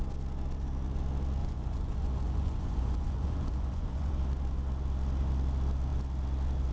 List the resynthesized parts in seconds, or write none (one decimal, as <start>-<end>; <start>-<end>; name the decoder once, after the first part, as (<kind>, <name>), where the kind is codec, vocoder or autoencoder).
1.4-4.1 (vocoder, Vocos)